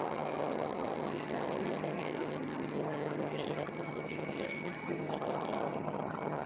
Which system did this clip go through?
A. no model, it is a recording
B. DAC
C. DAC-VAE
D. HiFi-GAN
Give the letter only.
D